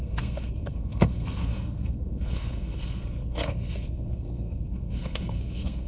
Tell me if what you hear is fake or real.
fake